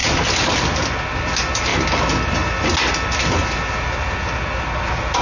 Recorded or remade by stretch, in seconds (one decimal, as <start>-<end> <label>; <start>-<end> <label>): 0.0-5.2 recorded